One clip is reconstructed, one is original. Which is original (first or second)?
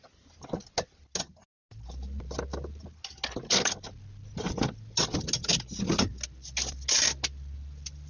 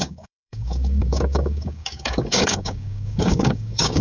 first